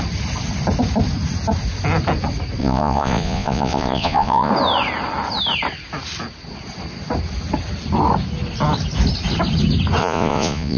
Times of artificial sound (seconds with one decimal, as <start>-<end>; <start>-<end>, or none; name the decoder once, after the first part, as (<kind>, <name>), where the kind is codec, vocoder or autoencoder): 2.6-4.5 (vocoder, Vocos); 10.0-10.8